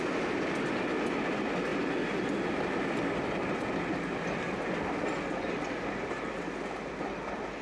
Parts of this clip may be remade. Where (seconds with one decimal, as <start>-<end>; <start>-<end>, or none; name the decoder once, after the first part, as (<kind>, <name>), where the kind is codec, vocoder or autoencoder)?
none